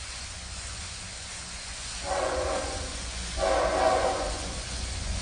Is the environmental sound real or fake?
fake